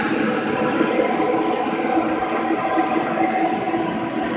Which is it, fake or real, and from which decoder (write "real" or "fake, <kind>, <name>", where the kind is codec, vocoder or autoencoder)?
fake, vocoder, BigVGAN v2